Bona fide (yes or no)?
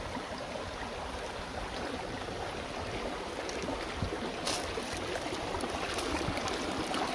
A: yes